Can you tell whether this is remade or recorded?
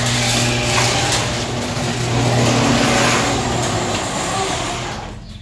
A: recorded